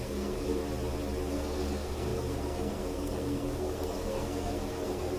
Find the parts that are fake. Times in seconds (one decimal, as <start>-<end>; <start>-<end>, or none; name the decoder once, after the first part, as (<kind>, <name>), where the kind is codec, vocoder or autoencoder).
0.0-0.6 (codec, SNAC); 1.3-5.2